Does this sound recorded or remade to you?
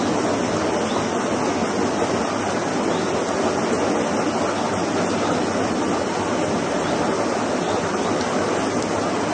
recorded